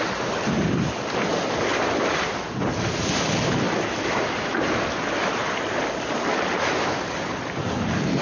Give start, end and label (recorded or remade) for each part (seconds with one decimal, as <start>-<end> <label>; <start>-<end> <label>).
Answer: 0.0-8.2 recorded